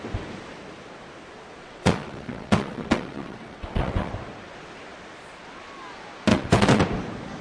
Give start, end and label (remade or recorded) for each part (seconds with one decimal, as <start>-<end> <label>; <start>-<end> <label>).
0.0-1.6 recorded; 1.6-4.1 remade; 4.1-6.3 recorded; 6.3-6.8 remade; 6.8-7.4 recorded